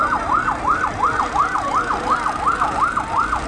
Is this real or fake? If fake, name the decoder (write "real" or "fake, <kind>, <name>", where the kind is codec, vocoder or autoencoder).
real